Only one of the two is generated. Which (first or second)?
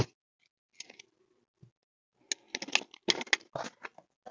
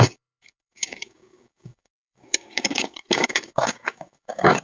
second